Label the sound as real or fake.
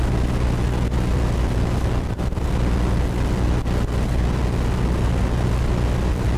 real